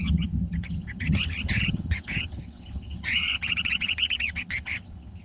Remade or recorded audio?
remade